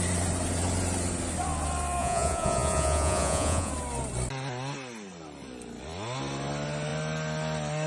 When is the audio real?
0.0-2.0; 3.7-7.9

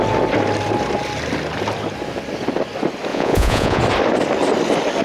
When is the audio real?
0.0-3.1; 3.8-5.0

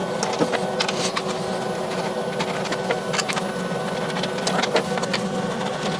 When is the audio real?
0.0-6.0

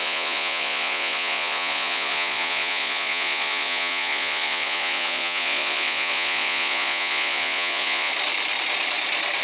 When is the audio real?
8.1-9.4

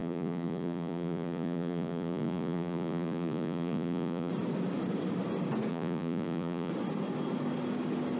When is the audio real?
4.3-5.7; 6.7-8.2

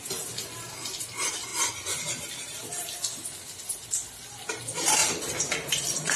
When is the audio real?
0.0-6.2

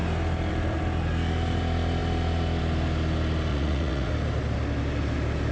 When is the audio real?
0.0-3.5; 4.1-5.5

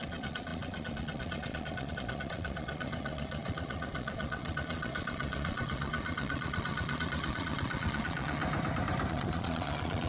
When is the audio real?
8.4-9.1